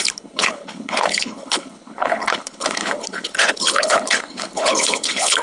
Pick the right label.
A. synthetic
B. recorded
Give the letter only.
A